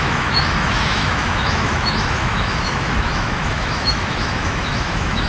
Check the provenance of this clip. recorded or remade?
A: remade